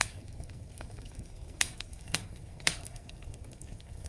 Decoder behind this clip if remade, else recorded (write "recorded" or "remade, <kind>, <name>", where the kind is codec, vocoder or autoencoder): remade, codec, SNAC